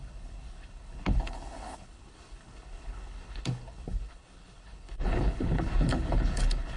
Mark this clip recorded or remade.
remade